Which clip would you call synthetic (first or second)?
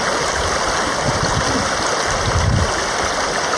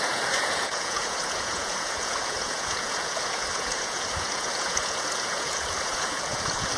second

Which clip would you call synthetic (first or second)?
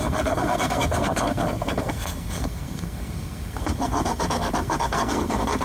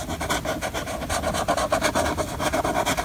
first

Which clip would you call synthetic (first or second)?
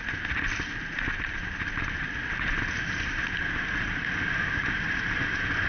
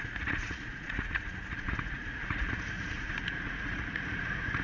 second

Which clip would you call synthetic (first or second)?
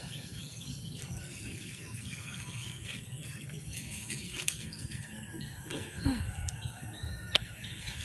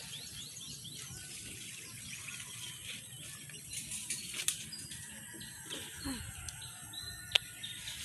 first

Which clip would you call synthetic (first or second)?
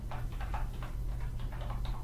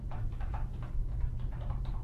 second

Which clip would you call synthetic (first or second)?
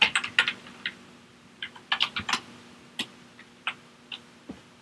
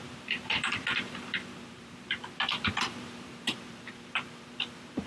second